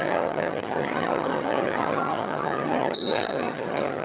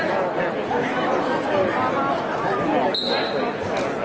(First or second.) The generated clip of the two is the first